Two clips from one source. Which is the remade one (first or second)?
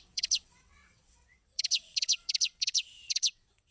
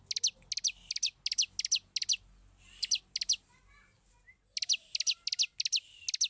first